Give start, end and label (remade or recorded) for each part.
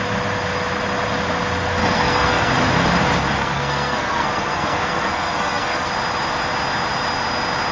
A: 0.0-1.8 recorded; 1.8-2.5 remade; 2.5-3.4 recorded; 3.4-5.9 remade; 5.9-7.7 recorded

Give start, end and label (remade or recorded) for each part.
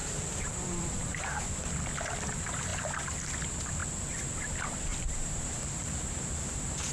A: 0.0-0.8 remade; 0.8-4.9 recorded; 4.9-6.9 remade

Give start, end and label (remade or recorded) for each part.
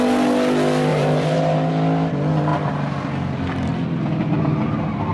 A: 0.0-0.9 recorded; 0.9-1.7 remade; 1.7-5.1 recorded